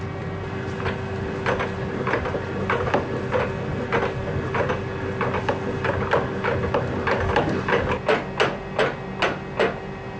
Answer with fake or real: real